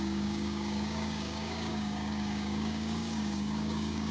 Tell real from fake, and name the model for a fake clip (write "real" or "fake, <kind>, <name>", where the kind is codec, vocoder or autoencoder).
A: fake, codec, DAC